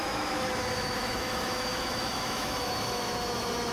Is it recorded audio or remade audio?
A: remade